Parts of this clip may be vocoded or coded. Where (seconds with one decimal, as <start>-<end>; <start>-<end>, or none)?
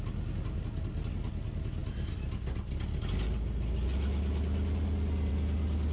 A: none